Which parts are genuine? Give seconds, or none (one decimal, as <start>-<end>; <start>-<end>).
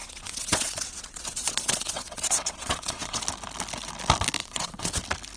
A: 3.2-4.4; 5.0-5.4